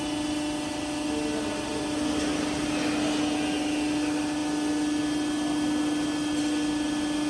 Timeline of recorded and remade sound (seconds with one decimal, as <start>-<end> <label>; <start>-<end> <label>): 0.0-7.3 recorded